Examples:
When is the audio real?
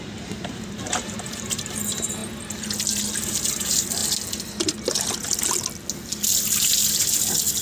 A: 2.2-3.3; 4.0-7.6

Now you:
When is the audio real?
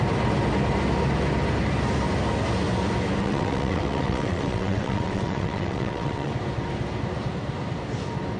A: 0.0-3.2; 6.3-8.4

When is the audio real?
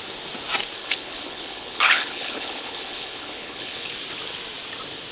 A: 0.0-0.8; 3.9-5.1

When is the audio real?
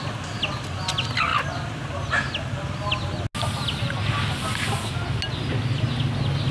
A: 0.0-6.5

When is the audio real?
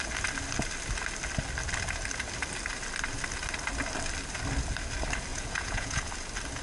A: 0.0-5.3; 6.0-6.6